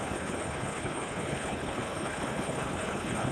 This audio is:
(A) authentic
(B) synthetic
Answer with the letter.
B